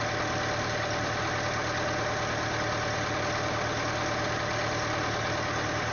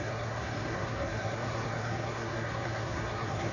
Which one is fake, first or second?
second